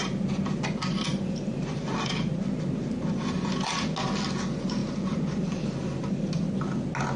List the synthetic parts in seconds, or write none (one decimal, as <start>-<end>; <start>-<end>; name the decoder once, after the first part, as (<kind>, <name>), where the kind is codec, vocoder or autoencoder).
0.0-3.5 (vocoder, BigVGAN v2); 4.8-6.5